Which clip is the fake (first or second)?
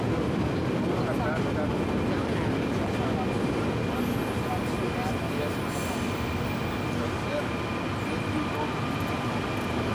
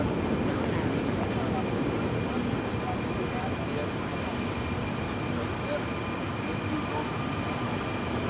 second